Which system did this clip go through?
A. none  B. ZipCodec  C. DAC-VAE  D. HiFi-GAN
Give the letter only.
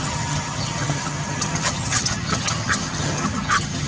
D